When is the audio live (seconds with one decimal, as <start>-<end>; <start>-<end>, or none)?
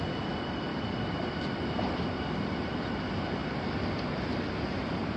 0.0-0.7; 1.3-3.4; 4.1-5.2